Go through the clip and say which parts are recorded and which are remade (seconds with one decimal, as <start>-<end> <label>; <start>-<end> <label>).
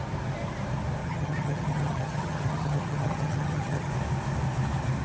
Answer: 0.0-1.0 recorded; 1.0-3.9 remade; 3.9-5.0 recorded